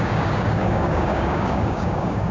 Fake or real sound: fake